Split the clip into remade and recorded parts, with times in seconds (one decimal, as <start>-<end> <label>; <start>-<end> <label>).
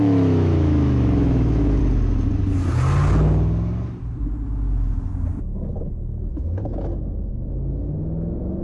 0.0-1.8 remade; 1.8-6.3 recorded; 6.3-6.9 remade; 6.9-7.7 recorded; 7.7-8.6 remade